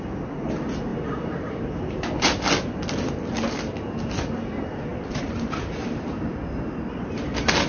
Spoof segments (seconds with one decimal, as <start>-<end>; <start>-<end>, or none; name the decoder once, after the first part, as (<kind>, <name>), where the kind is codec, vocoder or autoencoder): 0.9-2.2 (vocoder, BigVGAN v2); 4.9-6.1